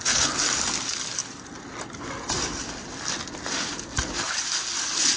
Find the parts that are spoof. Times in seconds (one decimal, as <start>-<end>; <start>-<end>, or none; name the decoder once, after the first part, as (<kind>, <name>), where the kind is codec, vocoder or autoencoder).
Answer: none